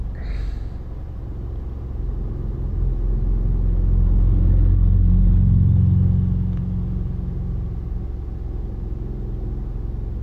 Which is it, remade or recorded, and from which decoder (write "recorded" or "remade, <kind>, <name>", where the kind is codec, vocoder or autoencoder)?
recorded